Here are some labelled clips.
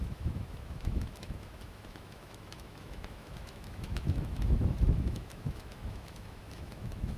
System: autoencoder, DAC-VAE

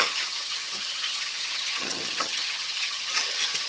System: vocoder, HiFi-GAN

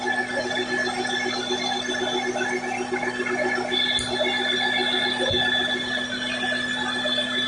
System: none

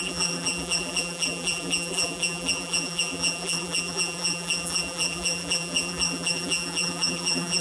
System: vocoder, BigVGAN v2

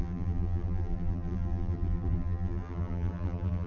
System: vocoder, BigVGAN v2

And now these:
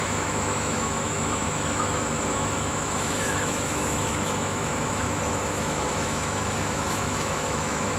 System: autoencoder, DAC-VAE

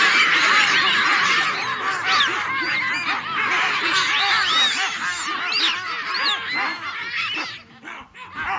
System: none